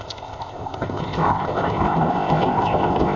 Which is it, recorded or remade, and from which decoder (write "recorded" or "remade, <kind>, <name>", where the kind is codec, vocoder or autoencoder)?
remade, codec, ZipCodec